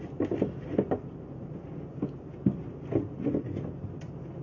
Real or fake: real